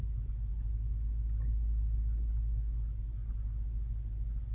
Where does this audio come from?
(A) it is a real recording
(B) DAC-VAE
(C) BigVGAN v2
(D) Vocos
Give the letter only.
A